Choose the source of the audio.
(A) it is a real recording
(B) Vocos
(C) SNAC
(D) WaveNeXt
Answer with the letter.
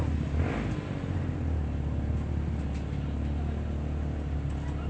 A